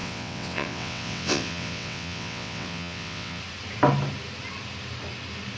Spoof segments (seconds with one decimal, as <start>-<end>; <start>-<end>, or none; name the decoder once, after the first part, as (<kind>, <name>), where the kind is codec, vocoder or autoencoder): 0.0-3.4 (vocoder, WaveNeXt)